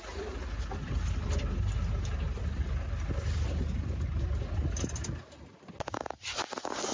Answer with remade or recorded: recorded